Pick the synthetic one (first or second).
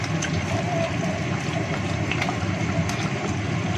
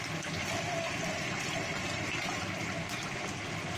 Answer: first